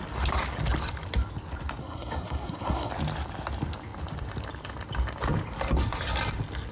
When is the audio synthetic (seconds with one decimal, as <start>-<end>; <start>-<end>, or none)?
1.8-2.9